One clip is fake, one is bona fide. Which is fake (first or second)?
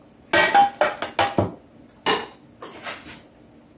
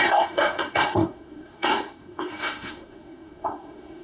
second